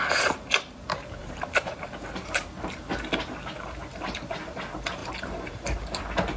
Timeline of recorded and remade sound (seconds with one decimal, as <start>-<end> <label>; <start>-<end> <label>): 0.0-1.2 recorded; 1.2-1.9 remade; 1.9-5.0 recorded; 5.0-6.0 remade; 6.0-6.4 recorded